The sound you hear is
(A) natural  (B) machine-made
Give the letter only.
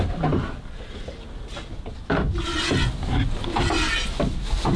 A